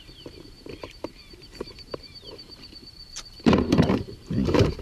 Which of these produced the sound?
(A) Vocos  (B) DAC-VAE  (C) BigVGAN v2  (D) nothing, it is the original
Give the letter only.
C